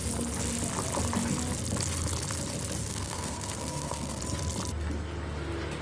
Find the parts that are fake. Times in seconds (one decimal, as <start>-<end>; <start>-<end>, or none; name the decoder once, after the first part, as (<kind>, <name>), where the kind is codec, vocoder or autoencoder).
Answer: 2.8-4.2 (codec, SNAC)